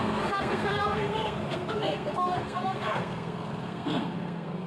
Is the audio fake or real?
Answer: fake